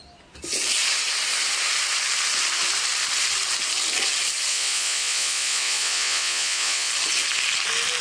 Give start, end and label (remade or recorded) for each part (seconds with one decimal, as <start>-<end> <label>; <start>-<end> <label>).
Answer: 0.0-4.5 recorded; 4.5-6.9 remade; 6.9-8.0 recorded